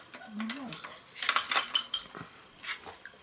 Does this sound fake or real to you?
real